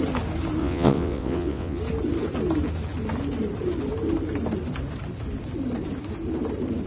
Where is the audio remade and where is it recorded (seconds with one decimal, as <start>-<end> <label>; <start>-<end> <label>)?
0.0-0.6 recorded; 0.6-1.8 remade; 1.8-6.9 recorded